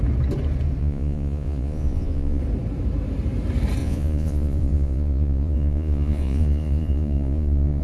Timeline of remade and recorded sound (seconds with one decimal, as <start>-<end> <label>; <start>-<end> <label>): 0.0-0.8 recorded; 0.8-2.4 remade; 2.4-3.8 recorded; 3.8-7.8 remade